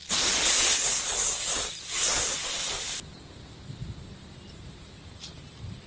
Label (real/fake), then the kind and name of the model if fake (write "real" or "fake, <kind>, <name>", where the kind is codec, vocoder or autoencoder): real